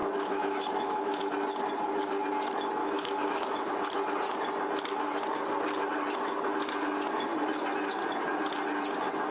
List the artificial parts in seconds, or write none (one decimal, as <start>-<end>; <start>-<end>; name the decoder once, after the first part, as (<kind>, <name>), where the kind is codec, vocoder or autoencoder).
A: 0.0-1.2 (autoencoder, DAC-VAE); 2.8-3.7